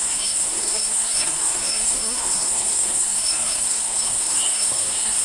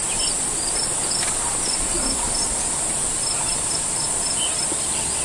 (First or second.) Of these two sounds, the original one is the second